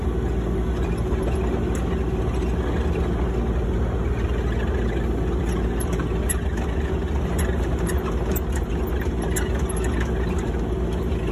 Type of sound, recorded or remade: recorded